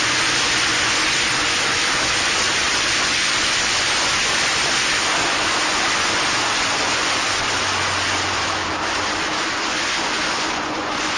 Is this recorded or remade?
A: remade